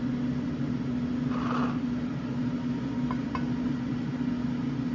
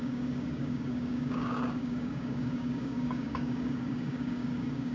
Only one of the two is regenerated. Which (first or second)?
second